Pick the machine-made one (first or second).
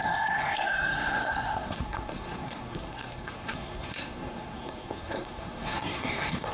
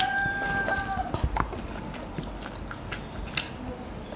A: first